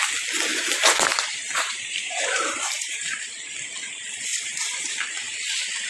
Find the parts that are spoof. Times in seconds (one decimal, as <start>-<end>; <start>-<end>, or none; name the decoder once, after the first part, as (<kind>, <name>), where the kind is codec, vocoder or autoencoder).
0.5-3.2 (vocoder, BigVGAN v2); 4.3-4.9